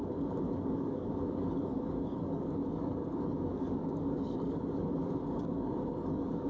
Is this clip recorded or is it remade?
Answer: remade